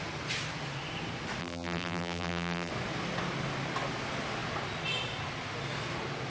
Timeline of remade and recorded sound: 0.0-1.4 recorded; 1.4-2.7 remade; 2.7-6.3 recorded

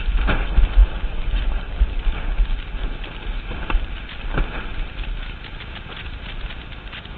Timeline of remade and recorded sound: 0.0-0.8 recorded; 0.8-2.0 remade; 2.0-2.8 recorded; 2.8-4.9 remade; 4.9-7.2 recorded

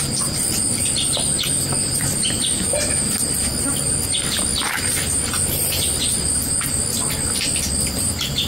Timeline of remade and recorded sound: 0.0-8.5 recorded